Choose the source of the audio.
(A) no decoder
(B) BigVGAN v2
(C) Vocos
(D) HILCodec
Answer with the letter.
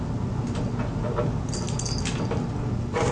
A